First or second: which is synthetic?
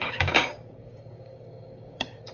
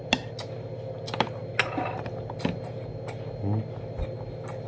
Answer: first